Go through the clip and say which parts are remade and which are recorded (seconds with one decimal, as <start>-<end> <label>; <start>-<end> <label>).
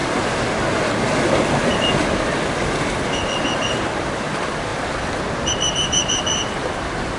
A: 0.0-1.7 recorded; 1.7-4.7 remade; 4.7-5.5 recorded; 5.5-7.2 remade